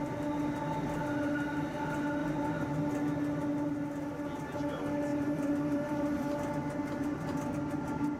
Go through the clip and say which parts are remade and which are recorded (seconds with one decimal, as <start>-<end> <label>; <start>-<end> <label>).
0.0-2.2 recorded; 2.2-2.7 remade; 2.7-5.1 recorded; 5.1-6.5 remade; 6.5-8.2 recorded